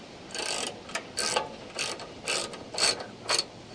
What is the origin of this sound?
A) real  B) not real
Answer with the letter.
A